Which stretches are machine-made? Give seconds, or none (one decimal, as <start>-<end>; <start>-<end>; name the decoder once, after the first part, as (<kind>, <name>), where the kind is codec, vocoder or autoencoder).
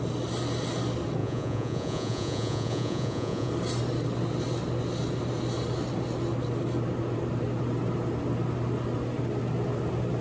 1.2-3.5 (vocoder, Vocos)